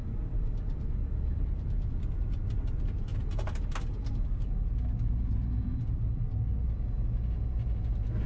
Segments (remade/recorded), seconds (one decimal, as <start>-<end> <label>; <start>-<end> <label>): 0.0-8.3 recorded